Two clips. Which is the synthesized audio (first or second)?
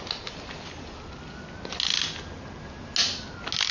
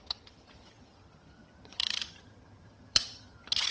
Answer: second